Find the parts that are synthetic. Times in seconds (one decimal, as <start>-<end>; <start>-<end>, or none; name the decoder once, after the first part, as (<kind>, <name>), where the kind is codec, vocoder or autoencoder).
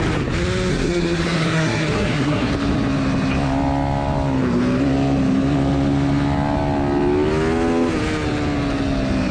0.7-2.5 (codec, SNAC)